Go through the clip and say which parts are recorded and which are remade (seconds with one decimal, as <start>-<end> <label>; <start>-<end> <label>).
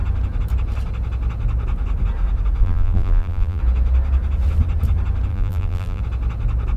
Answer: 0.0-2.6 recorded; 2.6-3.6 remade; 3.6-5.3 recorded; 5.3-6.0 remade; 6.0-6.8 recorded